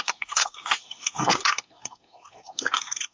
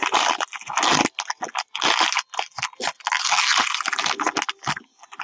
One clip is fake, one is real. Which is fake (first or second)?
first